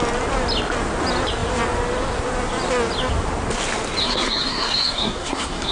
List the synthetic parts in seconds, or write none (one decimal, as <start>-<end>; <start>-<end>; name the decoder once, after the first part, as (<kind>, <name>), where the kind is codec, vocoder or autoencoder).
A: 4.0-5.7 (codec, SNAC)